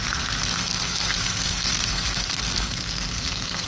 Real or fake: fake